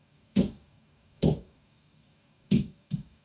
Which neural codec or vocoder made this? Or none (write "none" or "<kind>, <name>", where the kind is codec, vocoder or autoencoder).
codec, DAC